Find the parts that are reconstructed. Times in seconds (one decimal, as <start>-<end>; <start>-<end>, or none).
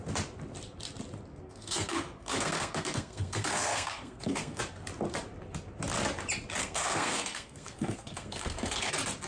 1.3-4.6; 6.6-8.9